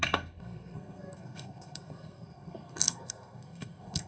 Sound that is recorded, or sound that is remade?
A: remade